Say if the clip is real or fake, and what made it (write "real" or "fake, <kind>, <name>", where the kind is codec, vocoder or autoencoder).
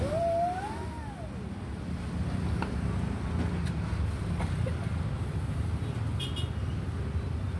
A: real